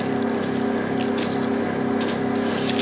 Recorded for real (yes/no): yes